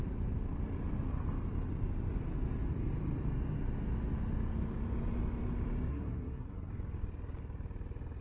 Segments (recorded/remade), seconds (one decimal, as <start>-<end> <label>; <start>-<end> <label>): 0.0-5.9 recorded; 5.9-6.7 remade; 6.7-8.2 recorded